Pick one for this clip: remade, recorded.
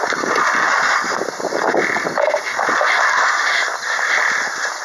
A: recorded